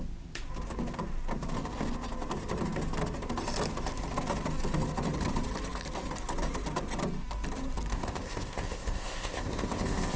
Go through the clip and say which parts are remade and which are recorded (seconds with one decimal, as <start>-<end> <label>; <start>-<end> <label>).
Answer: 0.0-7.9 recorded; 7.9-10.2 remade